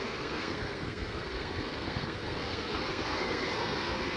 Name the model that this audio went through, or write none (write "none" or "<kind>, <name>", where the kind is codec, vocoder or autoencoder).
codec, SNAC